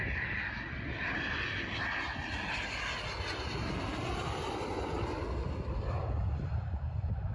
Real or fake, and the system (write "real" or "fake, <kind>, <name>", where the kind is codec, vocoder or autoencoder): real